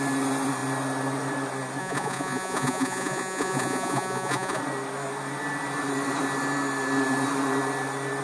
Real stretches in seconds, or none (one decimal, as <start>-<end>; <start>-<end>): 0.0-1.8; 4.6-8.2